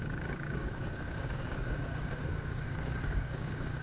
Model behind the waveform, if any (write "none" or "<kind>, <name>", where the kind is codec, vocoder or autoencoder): codec, DAC